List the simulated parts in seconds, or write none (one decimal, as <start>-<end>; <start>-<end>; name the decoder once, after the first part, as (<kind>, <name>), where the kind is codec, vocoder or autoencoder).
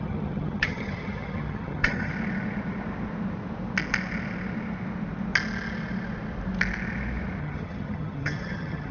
0.0-2.1 (vocoder, HiFi-GAN); 7.4-8.9